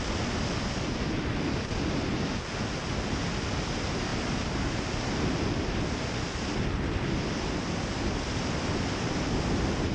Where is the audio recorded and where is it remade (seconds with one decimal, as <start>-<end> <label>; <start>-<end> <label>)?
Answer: 0.0-9.9 recorded